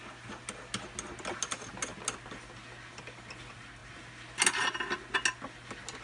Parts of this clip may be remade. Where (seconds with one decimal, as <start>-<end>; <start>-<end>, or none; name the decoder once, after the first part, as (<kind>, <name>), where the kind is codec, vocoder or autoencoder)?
none